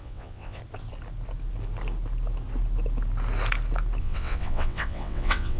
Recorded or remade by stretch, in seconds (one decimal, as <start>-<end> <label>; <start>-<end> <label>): 0.0-0.6 remade; 0.6-4.0 recorded; 4.0-5.6 remade